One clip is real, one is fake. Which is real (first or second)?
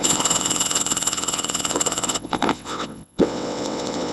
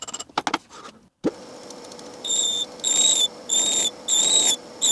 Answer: second